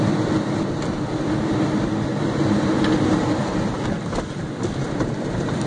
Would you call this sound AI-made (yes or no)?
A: no